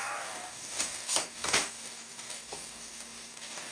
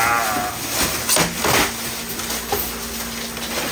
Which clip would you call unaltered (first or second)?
second